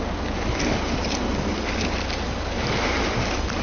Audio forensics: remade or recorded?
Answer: recorded